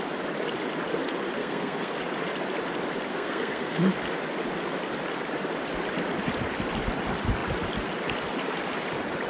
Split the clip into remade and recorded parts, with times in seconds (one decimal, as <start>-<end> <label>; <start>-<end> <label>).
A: 0.0-1.4 recorded; 1.4-1.9 remade; 1.9-3.1 recorded; 3.1-3.9 remade; 3.9-9.3 recorded